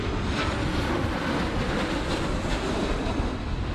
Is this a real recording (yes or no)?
yes